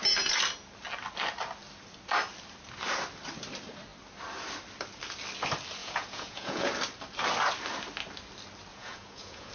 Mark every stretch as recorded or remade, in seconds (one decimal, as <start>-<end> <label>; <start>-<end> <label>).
0.0-5.8 recorded; 5.8-6.7 remade; 6.7-8.7 recorded; 8.7-9.5 remade